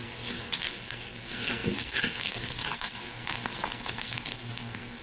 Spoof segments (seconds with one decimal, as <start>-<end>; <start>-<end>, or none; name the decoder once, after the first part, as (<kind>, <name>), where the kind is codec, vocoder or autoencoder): 0.0-5.0 (codec, SNAC)